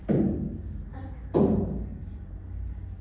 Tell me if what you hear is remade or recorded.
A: recorded